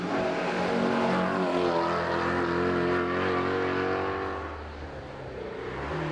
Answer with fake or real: real